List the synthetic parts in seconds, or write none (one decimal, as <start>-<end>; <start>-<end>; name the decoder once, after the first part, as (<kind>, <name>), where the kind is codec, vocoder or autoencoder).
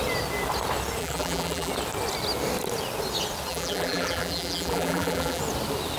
1.0-1.7 (vocoder, BigVGAN v2); 3.5-5.4